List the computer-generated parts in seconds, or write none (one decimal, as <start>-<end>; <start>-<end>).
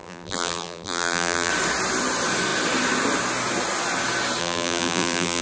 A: 0.0-1.5; 4.4-5.4